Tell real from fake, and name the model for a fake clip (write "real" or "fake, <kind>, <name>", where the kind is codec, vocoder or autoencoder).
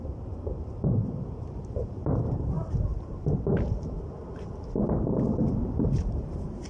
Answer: fake, vocoder, BigVGAN v2